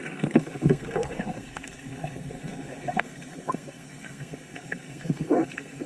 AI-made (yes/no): yes